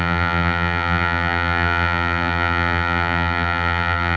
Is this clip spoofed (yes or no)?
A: yes